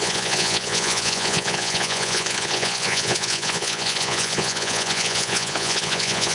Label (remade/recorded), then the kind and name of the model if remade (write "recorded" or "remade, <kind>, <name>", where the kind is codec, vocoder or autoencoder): remade, vocoder, Vocos